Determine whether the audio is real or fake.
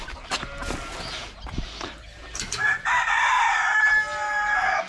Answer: real